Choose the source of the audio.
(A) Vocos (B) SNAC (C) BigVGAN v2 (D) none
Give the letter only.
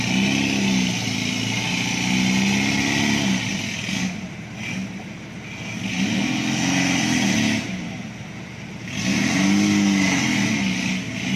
D